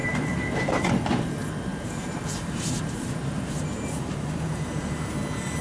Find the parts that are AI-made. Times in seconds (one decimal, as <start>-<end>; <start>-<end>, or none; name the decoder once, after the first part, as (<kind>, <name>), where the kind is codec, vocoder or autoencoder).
0.0-0.9 (vocoder, BigVGAN v2); 1.7-5.0